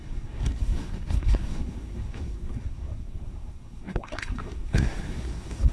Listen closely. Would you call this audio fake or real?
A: fake